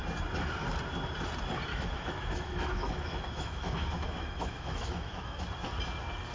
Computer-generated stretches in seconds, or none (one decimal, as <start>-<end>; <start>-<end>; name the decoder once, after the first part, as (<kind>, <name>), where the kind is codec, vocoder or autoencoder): 1.7-5.5 (autoencoder, DAC-VAE)

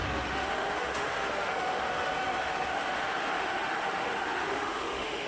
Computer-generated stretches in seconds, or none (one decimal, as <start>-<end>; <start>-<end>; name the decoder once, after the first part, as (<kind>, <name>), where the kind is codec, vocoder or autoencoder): 0.0-5.3 (autoencoder, DAC-VAE)

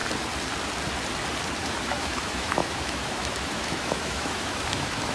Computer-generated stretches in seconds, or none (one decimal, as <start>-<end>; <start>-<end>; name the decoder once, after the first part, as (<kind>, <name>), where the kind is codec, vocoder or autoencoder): 1.7-5.1 (autoencoder, DAC-VAE)

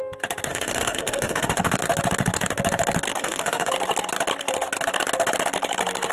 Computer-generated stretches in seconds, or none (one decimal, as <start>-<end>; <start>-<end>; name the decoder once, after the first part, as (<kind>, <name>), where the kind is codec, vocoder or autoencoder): 0.5-1.8 (autoencoder, DAC-VAE); 3.1-3.7

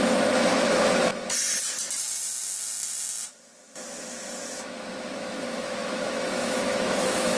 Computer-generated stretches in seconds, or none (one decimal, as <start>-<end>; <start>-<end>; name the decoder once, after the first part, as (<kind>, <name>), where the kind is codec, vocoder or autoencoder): 0.0-1.1 (autoencoder, DAC-VAE); 3.3-7.4